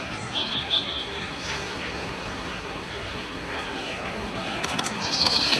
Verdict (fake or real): fake